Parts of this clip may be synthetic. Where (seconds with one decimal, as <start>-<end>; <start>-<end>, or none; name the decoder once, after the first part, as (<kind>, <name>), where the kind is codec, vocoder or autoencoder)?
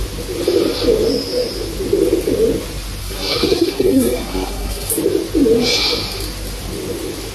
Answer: 3.0-4.9 (codec, SNAC)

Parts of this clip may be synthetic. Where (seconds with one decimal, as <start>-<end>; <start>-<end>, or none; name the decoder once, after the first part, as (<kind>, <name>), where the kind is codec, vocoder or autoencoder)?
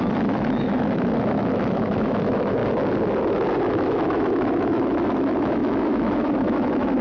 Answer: 0.0-2.6 (autoencoder, DAC-VAE); 3.7-7.0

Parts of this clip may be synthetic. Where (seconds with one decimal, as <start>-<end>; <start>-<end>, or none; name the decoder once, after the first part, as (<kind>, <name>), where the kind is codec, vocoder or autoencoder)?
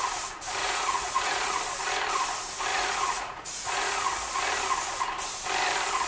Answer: 0.6-1.6 (vocoder, Vocos); 2.7-4.4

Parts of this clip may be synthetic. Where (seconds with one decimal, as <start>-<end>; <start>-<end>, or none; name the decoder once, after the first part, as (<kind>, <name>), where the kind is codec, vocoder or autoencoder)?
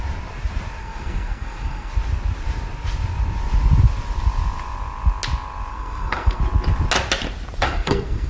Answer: 0.8-1.9 (codec, SNAC); 5.7-6.4; 7.6-8.3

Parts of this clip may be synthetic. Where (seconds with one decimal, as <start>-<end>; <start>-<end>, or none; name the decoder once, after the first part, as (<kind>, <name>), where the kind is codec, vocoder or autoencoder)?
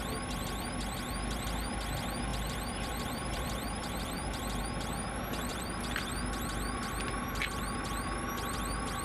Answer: 2.3-4.6 (vocoder, BigVGAN v2)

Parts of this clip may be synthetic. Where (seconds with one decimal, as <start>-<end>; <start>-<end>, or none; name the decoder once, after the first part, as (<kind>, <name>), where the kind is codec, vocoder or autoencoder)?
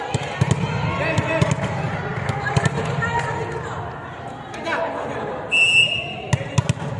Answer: none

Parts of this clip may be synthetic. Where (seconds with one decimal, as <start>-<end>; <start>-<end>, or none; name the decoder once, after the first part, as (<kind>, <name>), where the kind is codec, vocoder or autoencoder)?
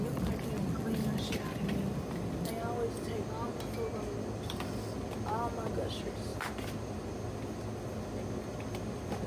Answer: none